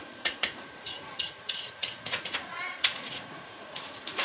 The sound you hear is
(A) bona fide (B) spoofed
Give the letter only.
B